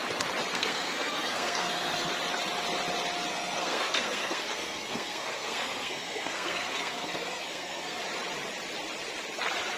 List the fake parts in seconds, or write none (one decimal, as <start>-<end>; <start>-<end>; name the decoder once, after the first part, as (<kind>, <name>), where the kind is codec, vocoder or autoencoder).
0.5-2.1 (codec, SNAC); 3.3-8.0